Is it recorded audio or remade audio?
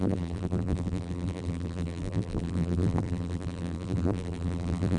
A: remade